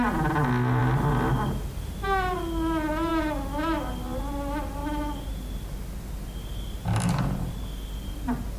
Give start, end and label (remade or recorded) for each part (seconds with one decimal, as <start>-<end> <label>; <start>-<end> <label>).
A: 0.0-8.6 recorded